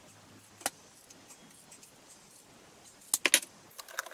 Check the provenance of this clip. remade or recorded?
recorded